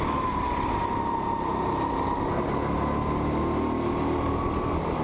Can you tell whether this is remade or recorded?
recorded